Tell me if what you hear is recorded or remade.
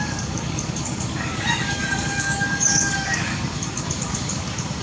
remade